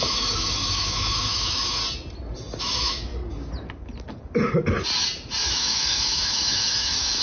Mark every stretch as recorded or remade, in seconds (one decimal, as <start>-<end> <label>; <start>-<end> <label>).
0.0-1.8 remade; 1.8-2.6 recorded; 2.6-3.1 remade; 3.1-5.5 recorded; 5.5-7.2 remade